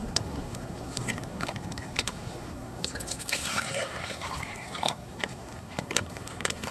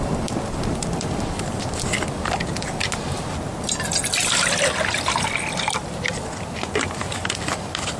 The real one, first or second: second